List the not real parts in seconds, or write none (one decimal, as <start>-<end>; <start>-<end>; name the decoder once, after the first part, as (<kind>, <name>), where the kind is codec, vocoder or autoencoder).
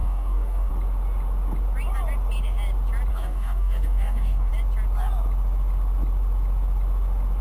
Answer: 0.0-0.7 (codec, DAC); 3.1-4.5